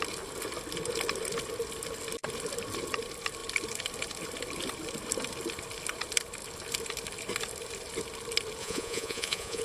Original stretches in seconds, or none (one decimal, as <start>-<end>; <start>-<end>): 0.0-8.6